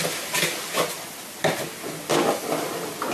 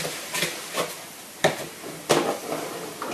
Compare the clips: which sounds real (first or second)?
first